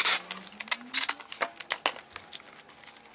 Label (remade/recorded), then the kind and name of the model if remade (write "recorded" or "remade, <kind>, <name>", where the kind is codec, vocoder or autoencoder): recorded